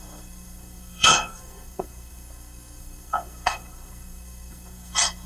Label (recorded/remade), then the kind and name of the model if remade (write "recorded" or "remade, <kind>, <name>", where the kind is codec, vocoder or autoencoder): remade, codec, SNAC